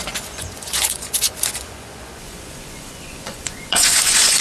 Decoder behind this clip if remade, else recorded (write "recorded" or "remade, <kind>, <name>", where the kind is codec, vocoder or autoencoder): remade, vocoder, Vocos